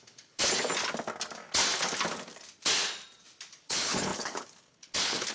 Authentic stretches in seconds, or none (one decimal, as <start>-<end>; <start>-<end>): 0.4-3.6